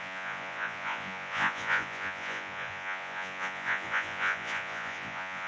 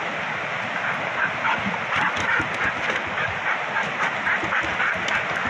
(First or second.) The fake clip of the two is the first